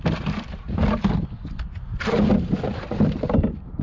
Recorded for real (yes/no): yes